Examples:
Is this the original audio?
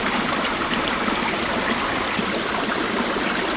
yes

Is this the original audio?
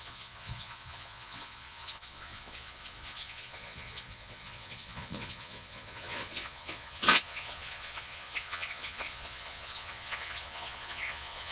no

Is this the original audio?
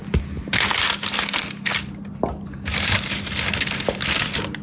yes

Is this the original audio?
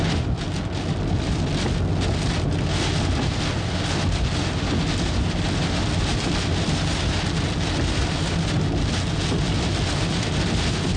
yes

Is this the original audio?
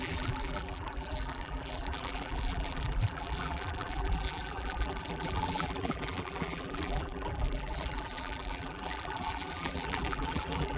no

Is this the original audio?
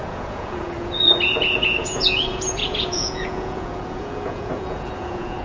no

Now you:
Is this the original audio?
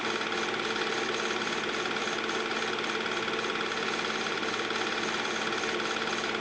yes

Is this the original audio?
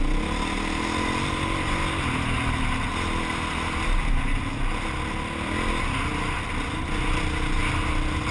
yes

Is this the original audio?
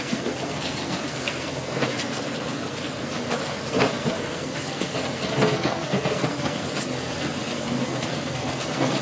no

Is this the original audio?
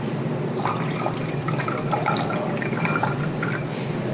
no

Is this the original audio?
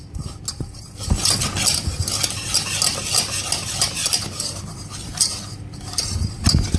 yes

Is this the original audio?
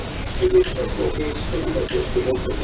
yes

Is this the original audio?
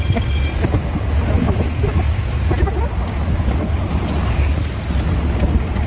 yes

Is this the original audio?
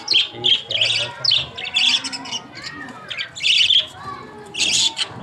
yes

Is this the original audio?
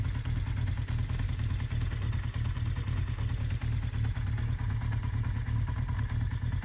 yes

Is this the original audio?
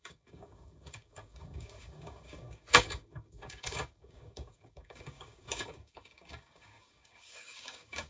no